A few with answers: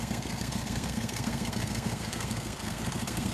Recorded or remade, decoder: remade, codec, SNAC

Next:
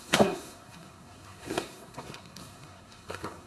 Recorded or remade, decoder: remade, codec, SNAC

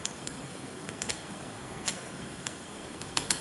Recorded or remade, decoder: remade, codec, SNAC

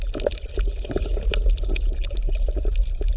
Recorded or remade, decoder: recorded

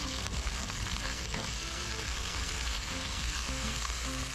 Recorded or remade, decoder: remade, codec, SNAC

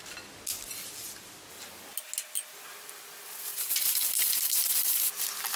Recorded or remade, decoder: recorded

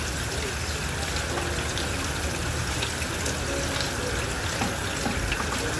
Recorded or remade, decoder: recorded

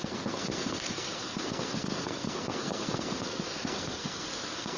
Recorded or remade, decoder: remade, codec, SNAC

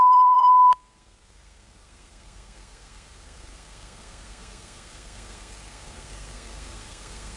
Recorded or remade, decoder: remade, codec, SNAC